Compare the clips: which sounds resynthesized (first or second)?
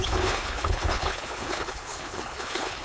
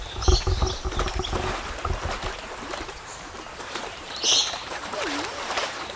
first